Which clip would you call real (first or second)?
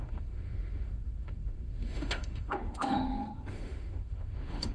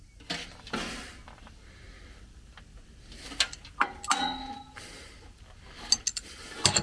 second